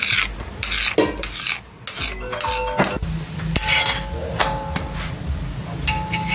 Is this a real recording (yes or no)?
yes